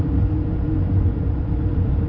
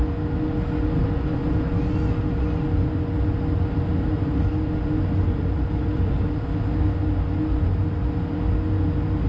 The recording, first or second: second